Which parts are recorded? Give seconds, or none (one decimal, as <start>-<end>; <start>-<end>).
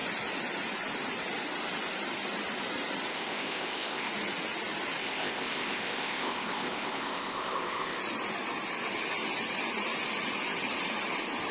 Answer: 0.0-3.1; 4.1-5.0; 8.0-11.5